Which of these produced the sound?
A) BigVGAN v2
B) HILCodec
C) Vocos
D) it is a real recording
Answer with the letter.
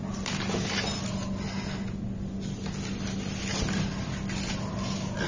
D